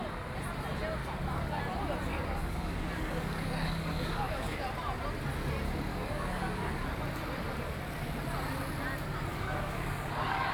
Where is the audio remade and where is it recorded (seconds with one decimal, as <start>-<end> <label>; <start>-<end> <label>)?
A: 0.0-1.0 recorded; 1.0-1.6 remade; 1.6-2.1 recorded; 2.1-4.6 remade; 4.6-5.9 recorded; 5.9-7.0 remade; 7.0-9.3 recorded; 9.3-10.5 remade